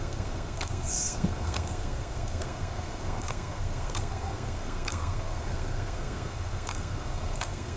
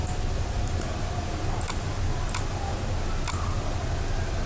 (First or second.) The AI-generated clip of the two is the first